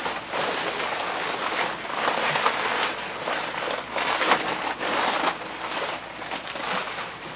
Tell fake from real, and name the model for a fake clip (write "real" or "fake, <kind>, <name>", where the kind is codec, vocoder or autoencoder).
real